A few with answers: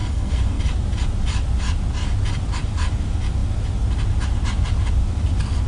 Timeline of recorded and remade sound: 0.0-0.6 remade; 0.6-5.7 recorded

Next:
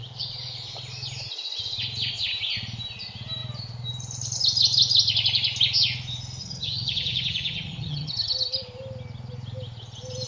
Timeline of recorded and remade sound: 0.0-6.4 recorded; 6.4-8.1 remade; 8.1-10.3 recorded

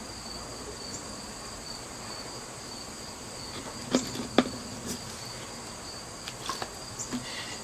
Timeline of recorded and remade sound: 0.0-0.5 recorded; 0.5-3.8 remade; 3.8-7.6 recorded